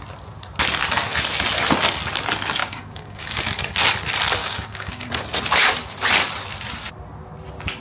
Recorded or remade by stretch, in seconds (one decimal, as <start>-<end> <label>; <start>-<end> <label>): 0.0-2.6 recorded; 2.6-3.4 remade; 3.4-4.4 recorded; 4.4-5.1 remade; 5.1-7.8 recorded